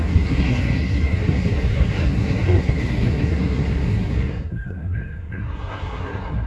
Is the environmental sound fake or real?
fake